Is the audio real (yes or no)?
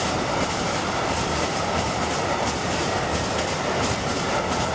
no